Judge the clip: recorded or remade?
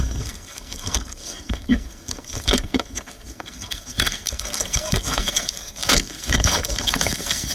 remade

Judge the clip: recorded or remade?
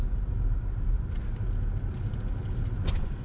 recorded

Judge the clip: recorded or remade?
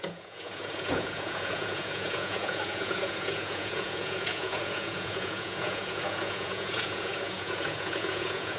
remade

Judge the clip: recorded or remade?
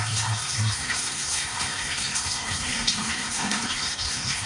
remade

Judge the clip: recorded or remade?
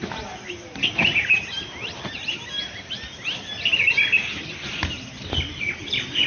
recorded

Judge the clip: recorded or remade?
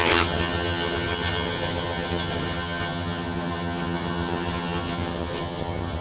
remade